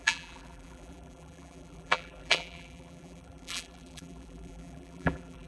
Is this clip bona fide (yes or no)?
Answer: no